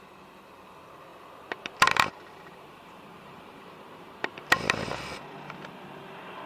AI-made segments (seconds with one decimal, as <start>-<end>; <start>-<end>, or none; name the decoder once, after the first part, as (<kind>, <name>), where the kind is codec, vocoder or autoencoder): 1.1-5.0 (vocoder, BigVGAN v2)